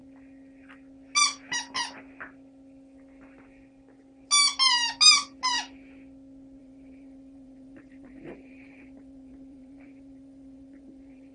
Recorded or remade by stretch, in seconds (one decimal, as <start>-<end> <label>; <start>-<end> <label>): 0.0-6.6 recorded; 6.6-11.3 remade